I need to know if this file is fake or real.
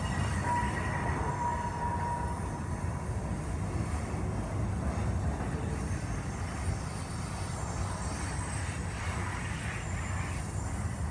real